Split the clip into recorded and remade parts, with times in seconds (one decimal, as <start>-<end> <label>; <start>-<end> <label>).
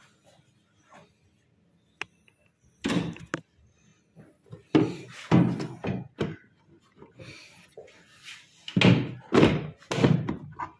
0.0-10.8 recorded